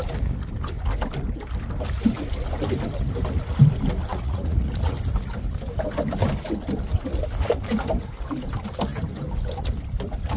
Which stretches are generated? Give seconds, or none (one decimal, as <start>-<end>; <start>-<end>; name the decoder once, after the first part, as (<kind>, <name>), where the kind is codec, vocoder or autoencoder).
4.1-4.7 (vocoder, Vocos)